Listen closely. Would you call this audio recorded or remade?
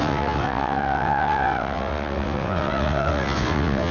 remade